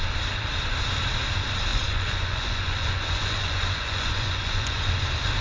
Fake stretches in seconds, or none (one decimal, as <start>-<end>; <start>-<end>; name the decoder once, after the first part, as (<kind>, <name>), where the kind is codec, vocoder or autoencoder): 1.7-4.9 (vocoder, Vocos)

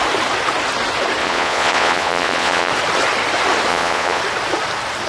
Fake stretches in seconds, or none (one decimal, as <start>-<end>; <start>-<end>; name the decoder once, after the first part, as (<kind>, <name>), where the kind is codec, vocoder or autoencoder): 1.2-2.7 (vocoder, Vocos); 3.7-4.2

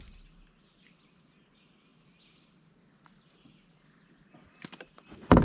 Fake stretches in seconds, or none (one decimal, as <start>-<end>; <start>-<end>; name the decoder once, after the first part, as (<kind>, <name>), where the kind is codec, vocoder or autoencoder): none

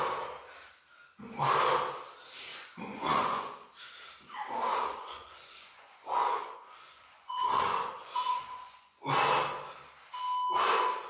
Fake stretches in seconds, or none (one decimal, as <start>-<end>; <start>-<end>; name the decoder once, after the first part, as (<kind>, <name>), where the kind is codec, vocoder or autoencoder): 2.5-3.7 (vocoder, Vocos); 4.7-9.0

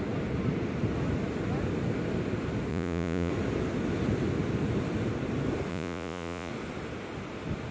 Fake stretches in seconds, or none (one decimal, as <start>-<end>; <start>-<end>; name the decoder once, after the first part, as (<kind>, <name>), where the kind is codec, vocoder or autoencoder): 2.7-3.3 (vocoder, Vocos); 5.7-6.5

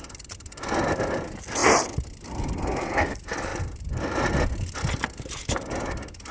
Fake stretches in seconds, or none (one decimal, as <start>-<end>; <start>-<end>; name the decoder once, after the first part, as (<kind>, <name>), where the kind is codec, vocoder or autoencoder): none

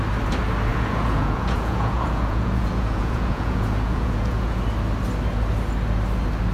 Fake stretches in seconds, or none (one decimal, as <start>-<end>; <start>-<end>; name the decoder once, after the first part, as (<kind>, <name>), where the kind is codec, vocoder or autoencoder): 0.7-4.6 (vocoder, Vocos)